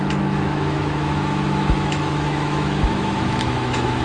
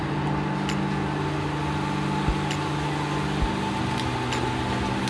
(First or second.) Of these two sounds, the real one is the second